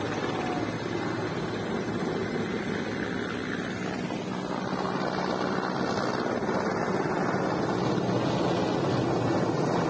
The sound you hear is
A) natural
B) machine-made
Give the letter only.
A